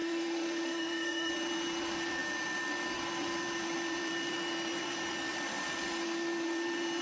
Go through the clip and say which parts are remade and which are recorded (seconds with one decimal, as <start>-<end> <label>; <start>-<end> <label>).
0.0-1.3 remade; 1.3-7.0 recorded